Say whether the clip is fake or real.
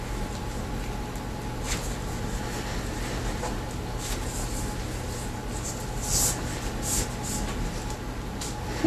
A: real